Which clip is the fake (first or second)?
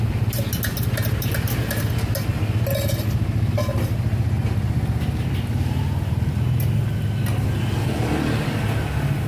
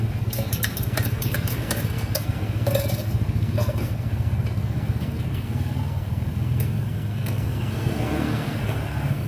second